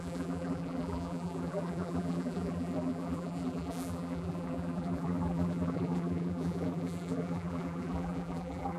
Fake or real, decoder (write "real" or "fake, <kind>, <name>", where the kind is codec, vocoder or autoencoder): fake, vocoder, BigVGAN v2